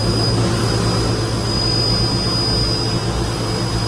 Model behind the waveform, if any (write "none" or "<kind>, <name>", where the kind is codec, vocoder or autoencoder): none